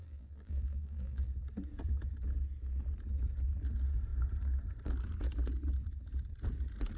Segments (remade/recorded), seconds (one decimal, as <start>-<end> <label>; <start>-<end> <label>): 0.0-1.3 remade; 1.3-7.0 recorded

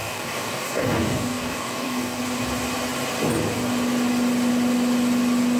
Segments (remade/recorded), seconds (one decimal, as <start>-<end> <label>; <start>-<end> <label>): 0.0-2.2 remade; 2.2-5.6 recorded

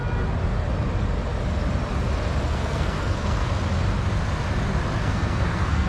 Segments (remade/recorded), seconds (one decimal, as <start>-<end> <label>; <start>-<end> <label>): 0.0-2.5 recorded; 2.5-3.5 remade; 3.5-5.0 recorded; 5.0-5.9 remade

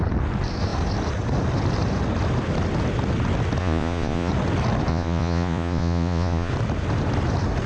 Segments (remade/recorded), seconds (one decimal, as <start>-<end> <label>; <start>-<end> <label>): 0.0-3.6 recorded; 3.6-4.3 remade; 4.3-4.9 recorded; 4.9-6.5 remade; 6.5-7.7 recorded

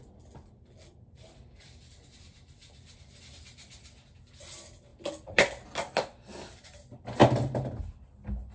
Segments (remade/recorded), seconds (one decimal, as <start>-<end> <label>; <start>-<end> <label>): 0.0-8.5 recorded